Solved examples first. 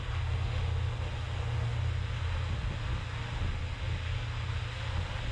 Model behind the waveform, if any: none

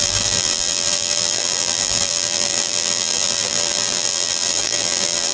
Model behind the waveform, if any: vocoder, BigVGAN v2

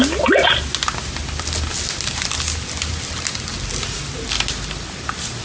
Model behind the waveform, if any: none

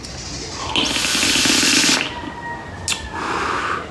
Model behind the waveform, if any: none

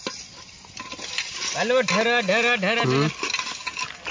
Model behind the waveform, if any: none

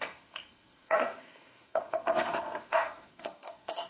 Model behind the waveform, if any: codec, SNAC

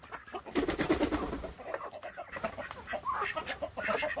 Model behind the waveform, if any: none